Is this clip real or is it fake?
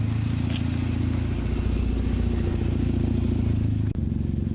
real